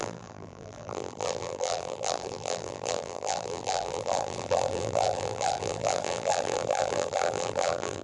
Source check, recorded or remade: remade